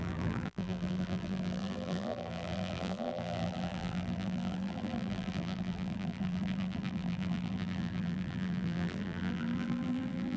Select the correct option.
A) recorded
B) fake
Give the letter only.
B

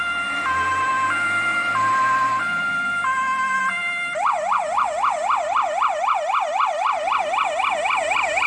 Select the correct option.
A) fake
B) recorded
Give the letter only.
B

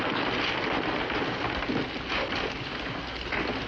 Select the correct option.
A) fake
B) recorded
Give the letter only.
B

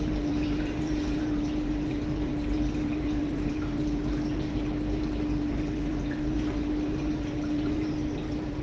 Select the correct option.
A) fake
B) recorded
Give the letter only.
A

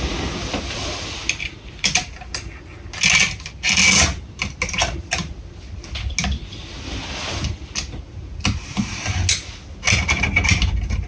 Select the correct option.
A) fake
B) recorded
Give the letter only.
B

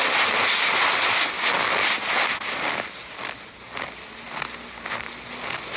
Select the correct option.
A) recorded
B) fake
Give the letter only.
A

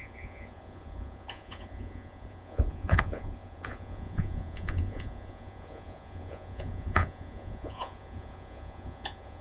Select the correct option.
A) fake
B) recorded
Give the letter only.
A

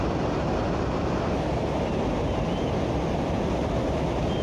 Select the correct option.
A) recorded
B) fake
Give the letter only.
A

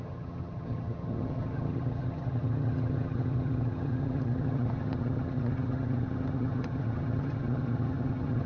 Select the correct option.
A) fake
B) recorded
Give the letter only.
A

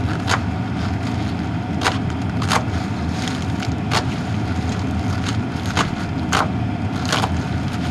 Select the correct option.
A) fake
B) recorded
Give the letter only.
B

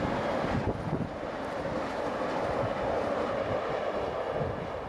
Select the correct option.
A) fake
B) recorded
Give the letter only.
B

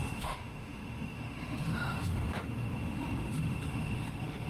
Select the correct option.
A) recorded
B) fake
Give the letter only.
B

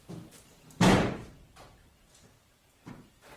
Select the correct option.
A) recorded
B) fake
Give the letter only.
B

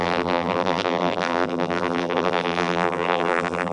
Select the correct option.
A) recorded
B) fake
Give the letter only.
B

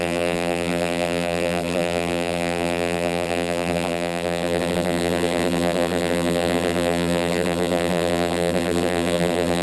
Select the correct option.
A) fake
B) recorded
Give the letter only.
A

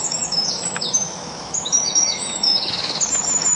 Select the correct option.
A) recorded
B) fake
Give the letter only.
B